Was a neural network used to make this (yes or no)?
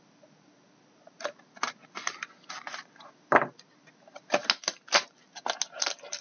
no